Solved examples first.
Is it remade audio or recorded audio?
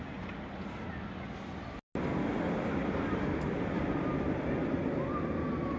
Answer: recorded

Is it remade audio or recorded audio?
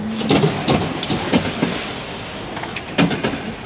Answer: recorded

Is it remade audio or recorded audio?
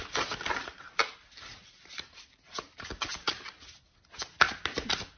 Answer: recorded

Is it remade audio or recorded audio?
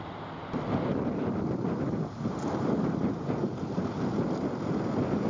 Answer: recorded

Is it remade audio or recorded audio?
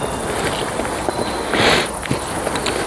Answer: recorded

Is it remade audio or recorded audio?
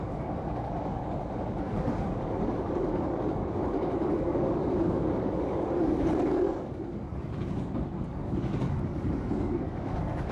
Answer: remade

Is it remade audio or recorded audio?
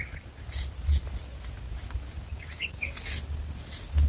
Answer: recorded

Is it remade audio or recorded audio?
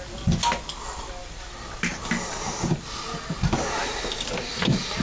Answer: recorded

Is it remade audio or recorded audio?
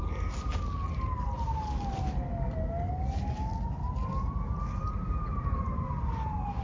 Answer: recorded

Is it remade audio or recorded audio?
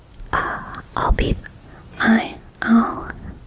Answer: recorded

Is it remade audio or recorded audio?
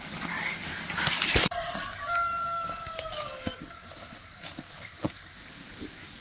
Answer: remade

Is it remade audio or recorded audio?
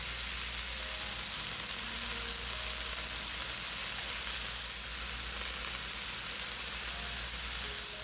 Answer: recorded